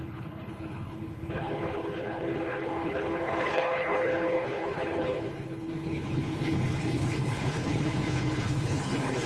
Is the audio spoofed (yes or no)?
yes